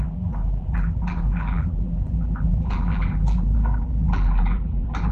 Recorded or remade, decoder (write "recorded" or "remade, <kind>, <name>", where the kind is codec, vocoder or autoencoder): remade, vocoder, BigVGAN v2